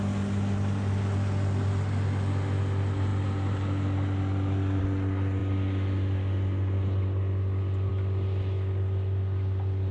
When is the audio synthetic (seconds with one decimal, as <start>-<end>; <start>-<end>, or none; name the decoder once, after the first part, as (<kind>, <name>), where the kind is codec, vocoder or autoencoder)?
none